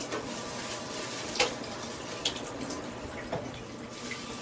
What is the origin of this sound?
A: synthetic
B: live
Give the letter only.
A